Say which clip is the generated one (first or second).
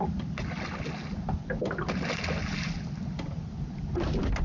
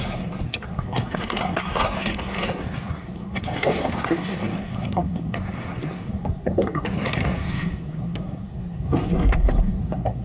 second